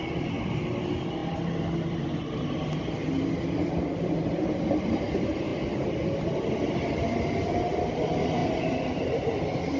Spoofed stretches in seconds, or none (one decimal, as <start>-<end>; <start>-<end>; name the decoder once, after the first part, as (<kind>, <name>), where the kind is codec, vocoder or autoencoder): none